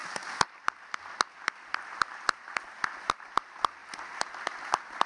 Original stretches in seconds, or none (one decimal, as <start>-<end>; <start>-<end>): 0.0-5.1